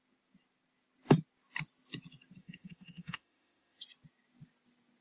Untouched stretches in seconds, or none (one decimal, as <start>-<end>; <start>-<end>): 0.0-2.4; 3.8-5.0